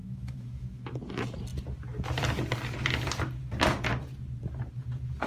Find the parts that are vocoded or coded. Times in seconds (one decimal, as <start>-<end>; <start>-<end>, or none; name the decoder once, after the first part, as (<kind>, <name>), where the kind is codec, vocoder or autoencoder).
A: 0.0-0.8 (autoencoder, DAC-VAE)